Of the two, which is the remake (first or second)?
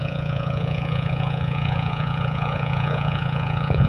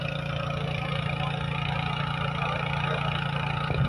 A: first